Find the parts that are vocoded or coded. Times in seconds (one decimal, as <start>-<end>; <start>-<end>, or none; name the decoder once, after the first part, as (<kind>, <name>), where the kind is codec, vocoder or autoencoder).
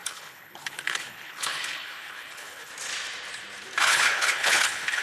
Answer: 0.0-2.7 (codec, HILCodec); 3.8-5.0